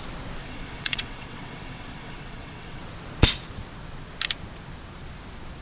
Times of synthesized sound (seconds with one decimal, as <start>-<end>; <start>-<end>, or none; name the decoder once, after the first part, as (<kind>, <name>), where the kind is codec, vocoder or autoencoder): 0.4-2.8 (vocoder, WaveNeXt)